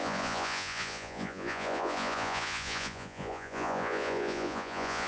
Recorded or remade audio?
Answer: remade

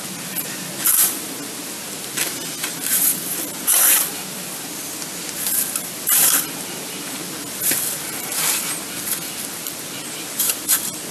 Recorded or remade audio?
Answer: recorded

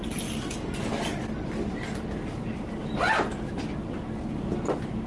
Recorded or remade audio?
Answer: recorded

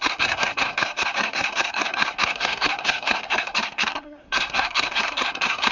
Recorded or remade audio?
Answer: remade